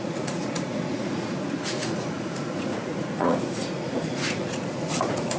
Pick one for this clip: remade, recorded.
remade